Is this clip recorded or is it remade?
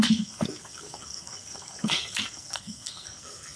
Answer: remade